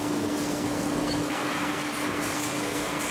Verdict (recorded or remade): remade